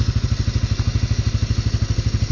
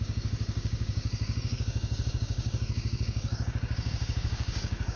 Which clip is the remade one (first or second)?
second